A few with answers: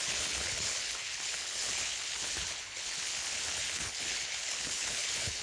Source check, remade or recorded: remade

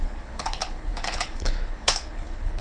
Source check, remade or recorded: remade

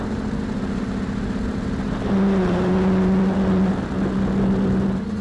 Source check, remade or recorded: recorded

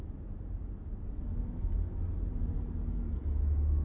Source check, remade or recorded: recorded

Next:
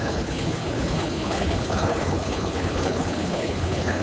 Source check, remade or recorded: remade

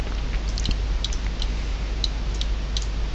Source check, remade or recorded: recorded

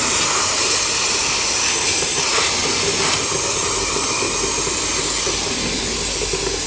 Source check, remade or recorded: recorded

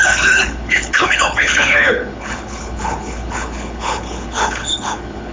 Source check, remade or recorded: remade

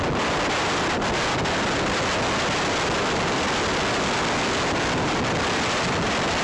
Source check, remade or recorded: recorded